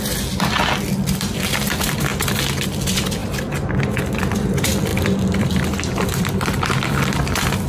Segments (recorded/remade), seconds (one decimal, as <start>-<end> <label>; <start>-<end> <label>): 0.0-4.9 recorded; 4.9-7.7 remade